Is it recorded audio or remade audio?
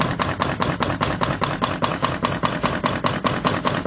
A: remade